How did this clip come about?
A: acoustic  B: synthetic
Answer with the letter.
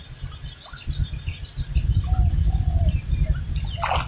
A